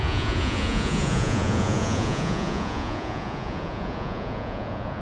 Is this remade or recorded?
remade